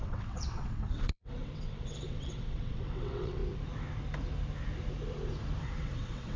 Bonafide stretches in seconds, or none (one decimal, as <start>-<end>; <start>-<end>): 3.4-5.6

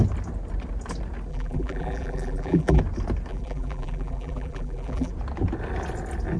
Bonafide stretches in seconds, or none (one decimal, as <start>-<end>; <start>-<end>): 0.0-1.3; 2.8-3.3; 5.1-6.4